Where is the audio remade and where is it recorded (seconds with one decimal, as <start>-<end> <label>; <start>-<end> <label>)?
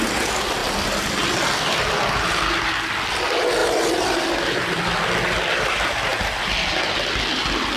0.0-0.6 recorded; 0.6-1.9 remade; 1.9-3.6 recorded; 3.6-4.4 remade; 4.4-7.8 recorded